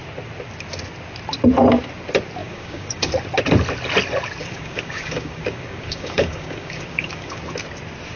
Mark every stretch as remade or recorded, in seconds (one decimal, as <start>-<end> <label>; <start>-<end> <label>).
0.0-2.4 recorded; 2.4-3.1 remade; 3.1-4.4 recorded; 4.4-7.4 remade; 7.4-8.2 recorded